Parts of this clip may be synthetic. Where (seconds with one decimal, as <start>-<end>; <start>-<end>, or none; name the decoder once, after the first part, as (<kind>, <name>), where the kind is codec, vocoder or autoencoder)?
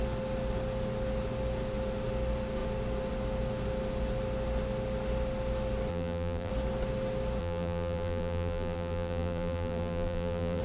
5.9-6.5 (vocoder, BigVGAN v2); 7.4-10.6